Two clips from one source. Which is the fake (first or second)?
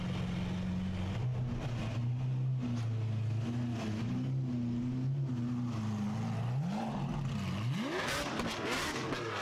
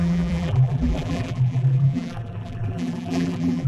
second